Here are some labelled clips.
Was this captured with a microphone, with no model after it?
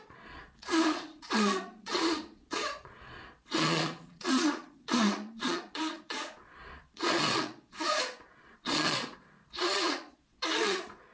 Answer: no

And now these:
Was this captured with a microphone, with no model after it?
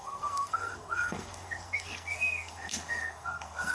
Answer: no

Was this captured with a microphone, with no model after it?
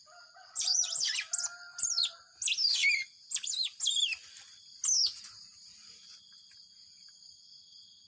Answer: yes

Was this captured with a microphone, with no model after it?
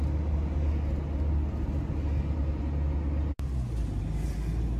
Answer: yes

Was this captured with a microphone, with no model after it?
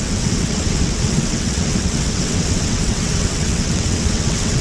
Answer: no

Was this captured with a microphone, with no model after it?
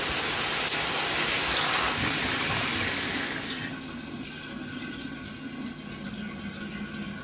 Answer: yes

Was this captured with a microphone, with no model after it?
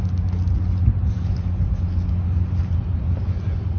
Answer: yes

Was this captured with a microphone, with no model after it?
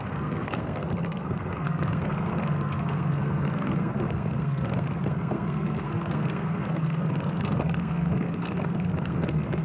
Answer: no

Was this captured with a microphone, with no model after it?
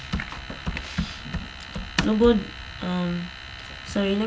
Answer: yes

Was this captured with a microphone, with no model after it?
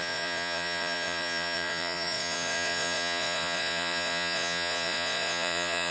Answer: no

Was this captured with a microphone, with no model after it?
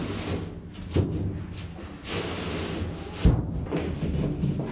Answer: yes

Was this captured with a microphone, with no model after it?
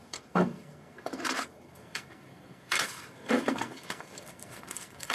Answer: no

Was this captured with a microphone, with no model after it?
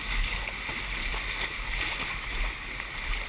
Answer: yes